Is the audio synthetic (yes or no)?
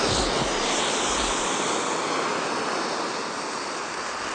no